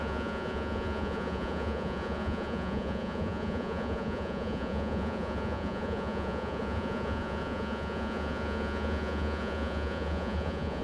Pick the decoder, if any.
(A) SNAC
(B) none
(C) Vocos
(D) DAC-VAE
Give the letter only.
C